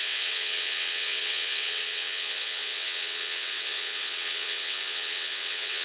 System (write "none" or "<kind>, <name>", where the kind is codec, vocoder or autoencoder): vocoder, WaveNeXt